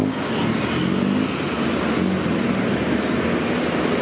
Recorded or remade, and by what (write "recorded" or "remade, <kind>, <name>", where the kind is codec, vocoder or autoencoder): recorded